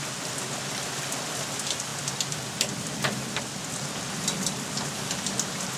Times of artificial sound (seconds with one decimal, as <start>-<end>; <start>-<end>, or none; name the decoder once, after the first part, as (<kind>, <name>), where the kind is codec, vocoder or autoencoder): none